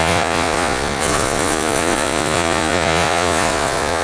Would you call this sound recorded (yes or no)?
no